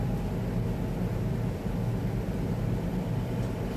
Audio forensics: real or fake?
fake